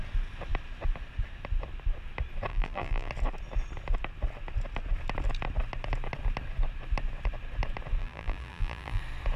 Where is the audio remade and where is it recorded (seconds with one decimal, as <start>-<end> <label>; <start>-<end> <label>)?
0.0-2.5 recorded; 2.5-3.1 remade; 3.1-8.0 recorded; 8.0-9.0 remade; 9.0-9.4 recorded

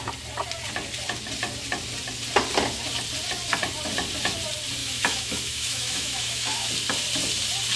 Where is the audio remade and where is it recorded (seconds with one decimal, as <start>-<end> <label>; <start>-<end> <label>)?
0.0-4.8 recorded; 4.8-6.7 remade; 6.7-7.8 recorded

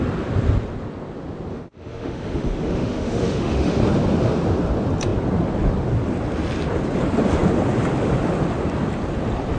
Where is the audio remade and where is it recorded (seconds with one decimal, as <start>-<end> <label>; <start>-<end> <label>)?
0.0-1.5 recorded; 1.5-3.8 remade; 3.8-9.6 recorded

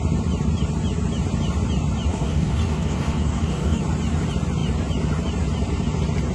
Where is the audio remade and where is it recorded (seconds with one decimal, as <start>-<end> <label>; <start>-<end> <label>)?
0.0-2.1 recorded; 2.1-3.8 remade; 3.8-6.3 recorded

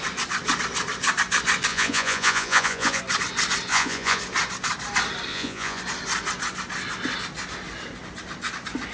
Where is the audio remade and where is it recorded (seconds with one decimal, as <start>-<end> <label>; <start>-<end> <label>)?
0.0-1.7 recorded; 1.7-3.0 remade; 3.0-3.7 recorded; 3.7-4.2 remade; 4.2-5.3 recorded; 5.3-5.8 remade; 5.8-8.9 recorded

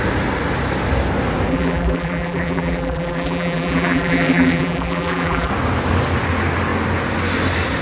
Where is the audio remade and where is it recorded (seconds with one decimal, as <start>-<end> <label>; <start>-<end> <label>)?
0.0-1.5 recorded; 1.5-5.5 remade; 5.5-7.8 recorded